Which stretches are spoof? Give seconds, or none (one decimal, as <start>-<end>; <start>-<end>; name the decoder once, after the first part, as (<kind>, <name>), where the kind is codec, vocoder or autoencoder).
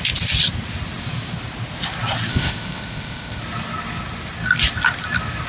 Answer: 2.3-3.4 (codec, ZipCodec)